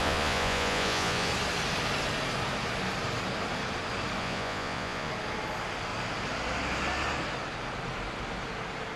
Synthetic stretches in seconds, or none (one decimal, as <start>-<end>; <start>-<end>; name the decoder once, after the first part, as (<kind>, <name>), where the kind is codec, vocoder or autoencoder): 0.0-1.3 (vocoder, Vocos); 4.2-5.1